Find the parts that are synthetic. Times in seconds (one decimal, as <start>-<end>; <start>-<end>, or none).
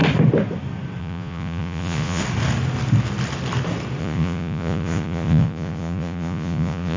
1.0-2.2; 4.0-7.0